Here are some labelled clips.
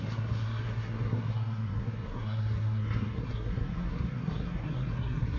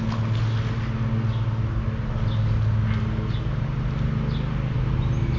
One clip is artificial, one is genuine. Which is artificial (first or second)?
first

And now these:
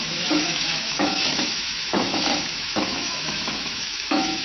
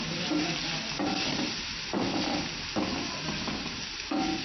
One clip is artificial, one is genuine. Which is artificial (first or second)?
first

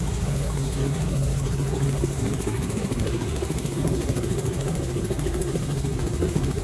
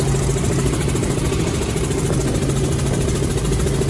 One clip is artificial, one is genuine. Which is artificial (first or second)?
first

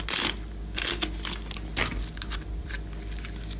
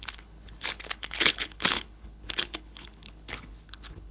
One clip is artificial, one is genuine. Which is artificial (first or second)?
second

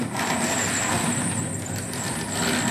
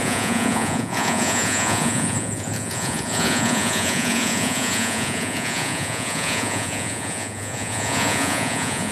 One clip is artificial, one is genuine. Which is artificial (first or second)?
second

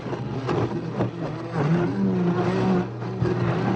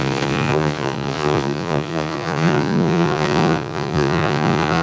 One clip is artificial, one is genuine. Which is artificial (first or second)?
second